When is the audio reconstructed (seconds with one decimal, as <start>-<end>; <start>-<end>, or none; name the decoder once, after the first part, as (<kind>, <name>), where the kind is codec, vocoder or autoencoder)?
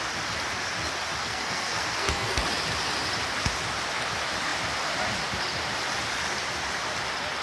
1.2-2.4 (codec, SNAC)